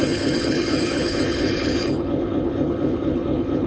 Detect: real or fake fake